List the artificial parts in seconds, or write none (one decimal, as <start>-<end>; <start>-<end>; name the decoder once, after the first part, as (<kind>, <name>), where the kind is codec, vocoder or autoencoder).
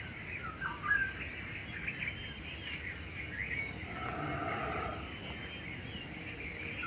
none